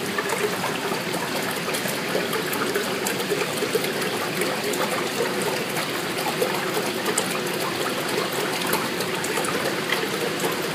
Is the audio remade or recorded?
recorded